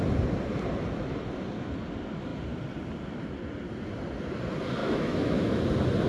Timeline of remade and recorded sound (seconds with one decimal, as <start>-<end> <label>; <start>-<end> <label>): 0.0-4.8 recorded; 4.8-5.6 remade; 5.6-6.1 recorded